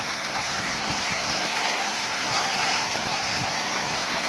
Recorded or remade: remade